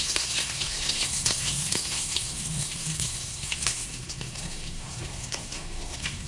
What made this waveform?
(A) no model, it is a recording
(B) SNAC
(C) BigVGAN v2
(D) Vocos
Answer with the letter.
B